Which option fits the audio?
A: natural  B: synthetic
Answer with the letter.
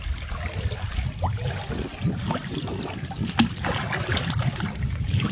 A